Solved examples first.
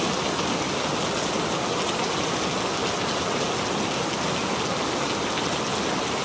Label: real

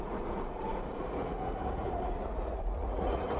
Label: fake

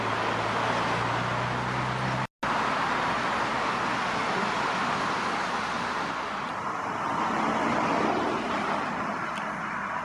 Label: real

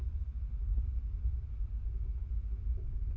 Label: real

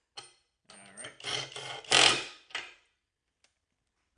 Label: real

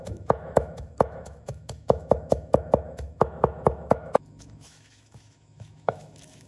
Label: fake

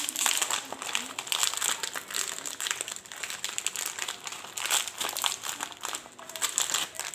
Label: real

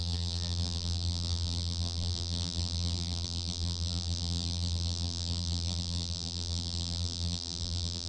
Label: fake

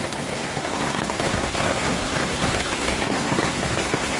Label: fake